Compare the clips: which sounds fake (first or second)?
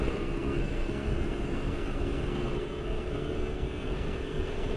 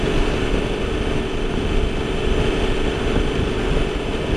first